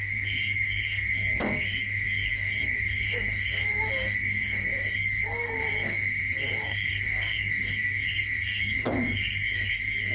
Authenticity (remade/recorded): remade